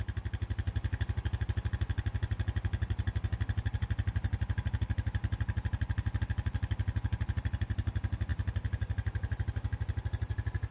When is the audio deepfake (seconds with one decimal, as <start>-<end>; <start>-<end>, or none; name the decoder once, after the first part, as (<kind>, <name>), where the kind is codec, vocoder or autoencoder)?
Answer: none